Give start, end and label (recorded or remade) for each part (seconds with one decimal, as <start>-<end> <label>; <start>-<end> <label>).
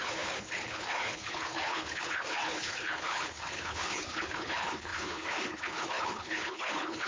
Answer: 0.0-7.1 remade